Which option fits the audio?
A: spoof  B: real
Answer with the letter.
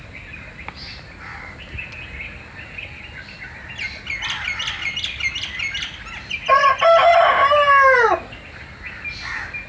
B